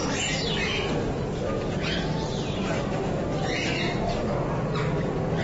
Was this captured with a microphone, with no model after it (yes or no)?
yes